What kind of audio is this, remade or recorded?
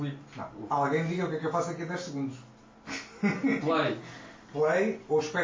recorded